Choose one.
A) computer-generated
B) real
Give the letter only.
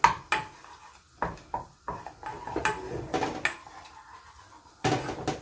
B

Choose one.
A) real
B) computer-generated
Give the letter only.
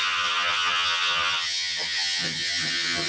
B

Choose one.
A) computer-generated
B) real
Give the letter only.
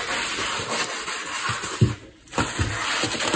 B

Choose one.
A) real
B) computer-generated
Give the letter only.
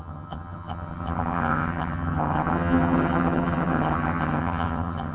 B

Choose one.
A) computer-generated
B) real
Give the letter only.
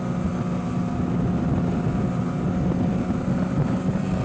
B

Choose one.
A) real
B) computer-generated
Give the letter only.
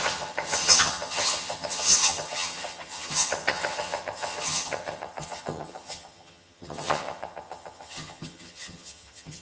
B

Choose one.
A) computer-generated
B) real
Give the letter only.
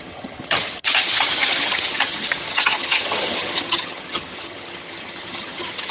A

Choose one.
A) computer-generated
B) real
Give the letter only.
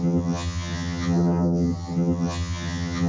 A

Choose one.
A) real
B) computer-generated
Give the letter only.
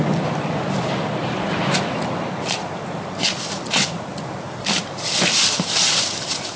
A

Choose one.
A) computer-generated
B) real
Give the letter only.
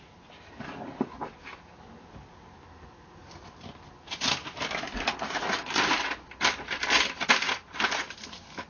B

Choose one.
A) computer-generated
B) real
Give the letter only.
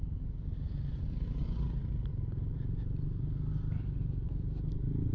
B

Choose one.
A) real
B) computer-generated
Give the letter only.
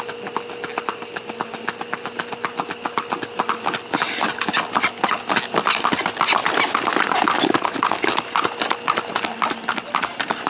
A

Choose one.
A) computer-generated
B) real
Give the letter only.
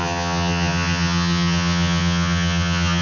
A